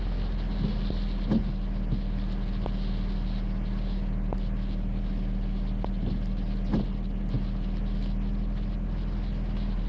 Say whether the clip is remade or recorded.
recorded